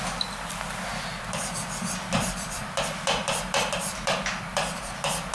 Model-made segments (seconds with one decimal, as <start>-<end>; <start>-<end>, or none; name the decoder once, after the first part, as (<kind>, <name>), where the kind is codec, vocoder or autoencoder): 0.9-4.1 (vocoder, BigVGAN v2); 4.5-5.3